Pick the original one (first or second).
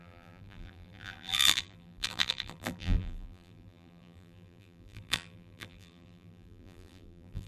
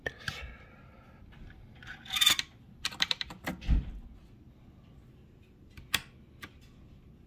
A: second